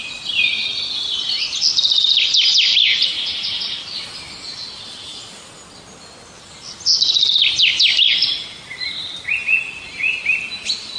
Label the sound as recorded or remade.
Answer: recorded